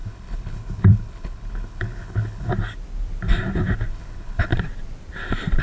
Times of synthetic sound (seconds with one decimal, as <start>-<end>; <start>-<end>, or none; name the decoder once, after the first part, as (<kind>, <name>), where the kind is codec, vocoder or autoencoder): 0.0-2.5 (codec, HILCodec); 3.9-4.5